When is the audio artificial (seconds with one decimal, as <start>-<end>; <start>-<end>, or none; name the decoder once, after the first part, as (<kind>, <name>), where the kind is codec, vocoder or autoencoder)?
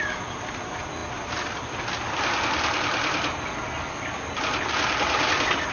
none